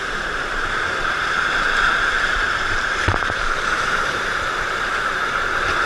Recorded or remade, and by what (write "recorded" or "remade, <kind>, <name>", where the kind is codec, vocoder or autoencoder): remade, vocoder, BigVGAN v2